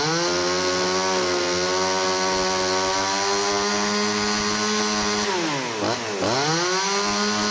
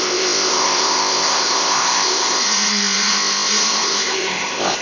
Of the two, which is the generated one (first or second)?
second